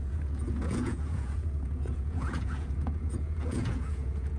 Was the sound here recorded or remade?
remade